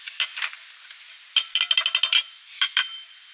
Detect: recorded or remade recorded